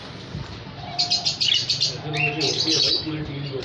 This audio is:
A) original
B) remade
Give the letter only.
A